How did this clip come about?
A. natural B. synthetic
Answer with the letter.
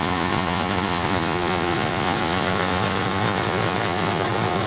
B